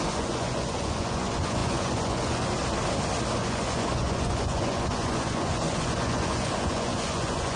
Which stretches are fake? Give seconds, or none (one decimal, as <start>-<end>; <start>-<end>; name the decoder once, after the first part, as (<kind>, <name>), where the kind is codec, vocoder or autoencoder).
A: 0.0-2.6 (vocoder, Vocos); 3.4-7.6